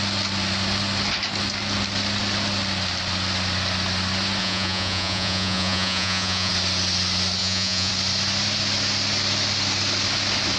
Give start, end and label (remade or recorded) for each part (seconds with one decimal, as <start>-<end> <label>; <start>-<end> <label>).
0.0-4.4 recorded; 4.4-6.5 remade; 6.5-7.4 recorded; 7.4-7.9 remade; 7.9-10.6 recorded